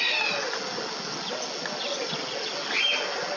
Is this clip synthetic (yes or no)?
no